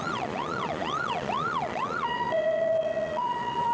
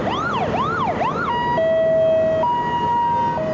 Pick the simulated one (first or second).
first